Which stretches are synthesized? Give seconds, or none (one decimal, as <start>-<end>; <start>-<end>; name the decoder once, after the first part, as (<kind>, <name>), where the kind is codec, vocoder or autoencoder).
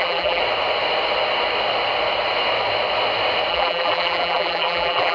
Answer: 0.0-0.4 (vocoder, BigVGAN v2); 3.5-5.1